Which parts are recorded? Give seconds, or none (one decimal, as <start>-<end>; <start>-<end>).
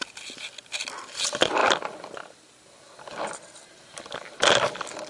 0.0-5.1